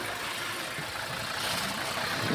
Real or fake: real